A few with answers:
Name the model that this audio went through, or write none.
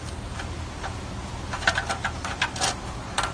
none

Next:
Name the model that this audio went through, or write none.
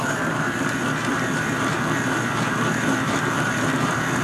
vocoder, BigVGAN v2